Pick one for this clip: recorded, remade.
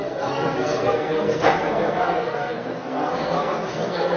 remade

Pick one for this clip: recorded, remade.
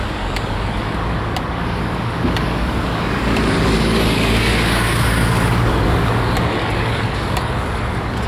remade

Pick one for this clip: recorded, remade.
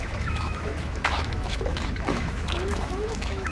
remade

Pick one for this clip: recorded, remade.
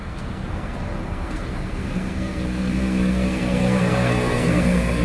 remade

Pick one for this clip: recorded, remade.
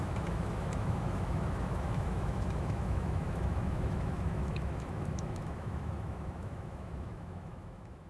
remade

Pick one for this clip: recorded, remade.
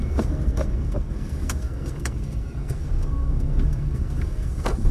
remade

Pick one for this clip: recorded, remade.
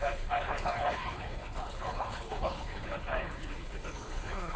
remade